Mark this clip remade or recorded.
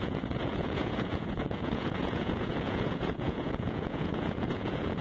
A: remade